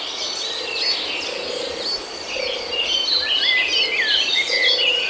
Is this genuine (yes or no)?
yes